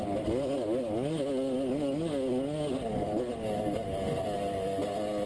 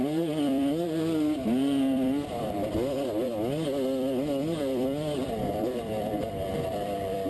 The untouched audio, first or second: first